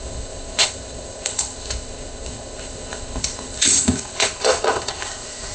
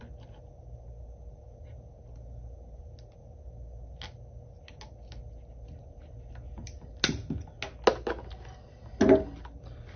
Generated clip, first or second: first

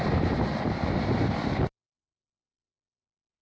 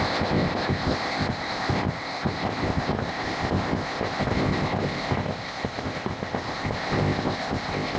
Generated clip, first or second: second